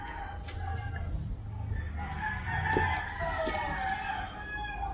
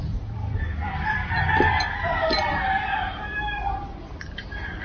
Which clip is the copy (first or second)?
second